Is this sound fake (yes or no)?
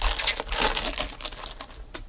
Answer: no